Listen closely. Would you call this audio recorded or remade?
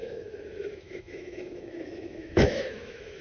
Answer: remade